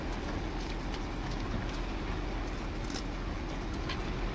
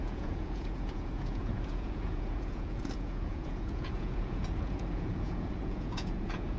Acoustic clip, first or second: first